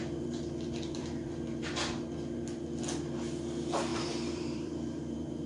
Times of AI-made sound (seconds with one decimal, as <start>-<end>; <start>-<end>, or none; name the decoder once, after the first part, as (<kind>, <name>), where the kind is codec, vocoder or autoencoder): 0.0-1.7 (vocoder, BigVGAN v2); 3.9-5.5